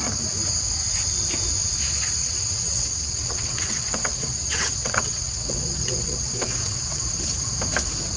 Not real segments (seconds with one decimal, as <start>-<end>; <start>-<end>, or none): 2.2-6.8